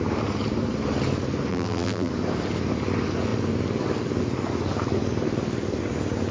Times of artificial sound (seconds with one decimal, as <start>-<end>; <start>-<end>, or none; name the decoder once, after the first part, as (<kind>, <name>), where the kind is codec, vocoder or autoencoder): 1.5-2.1 (vocoder, BigVGAN v2)